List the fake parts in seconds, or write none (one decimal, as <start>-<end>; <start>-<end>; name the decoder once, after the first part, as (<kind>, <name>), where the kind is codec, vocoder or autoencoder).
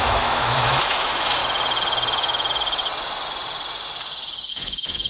0.0-1.4 (autoencoder, DAC-VAE); 4.5-5.1